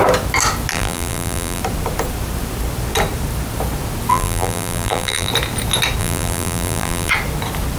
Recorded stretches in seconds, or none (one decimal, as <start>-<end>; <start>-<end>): 0.0-0.7; 1.6-4.1; 5.3-6.0; 7.1-7.8